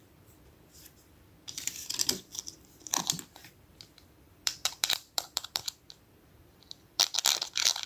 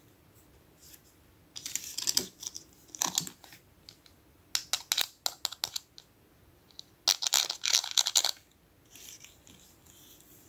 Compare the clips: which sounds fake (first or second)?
first